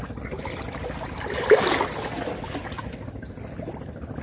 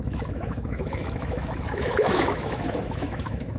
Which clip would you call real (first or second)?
first